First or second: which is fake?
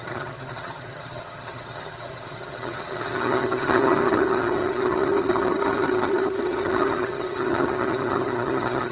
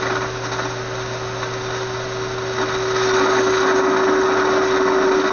first